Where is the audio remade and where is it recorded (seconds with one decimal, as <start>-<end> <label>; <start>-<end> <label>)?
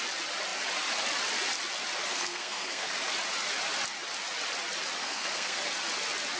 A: 0.0-2.1 recorded; 2.1-2.9 remade; 2.9-5.0 recorded; 5.0-5.6 remade; 5.6-6.4 recorded